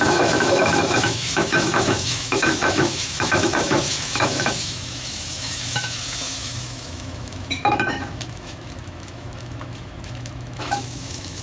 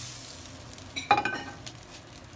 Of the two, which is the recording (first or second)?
second